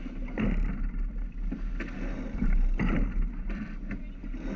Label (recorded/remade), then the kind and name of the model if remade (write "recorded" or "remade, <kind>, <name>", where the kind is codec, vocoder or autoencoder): recorded